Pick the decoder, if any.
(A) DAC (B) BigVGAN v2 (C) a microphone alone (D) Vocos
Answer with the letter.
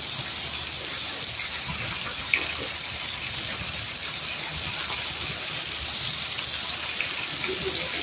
C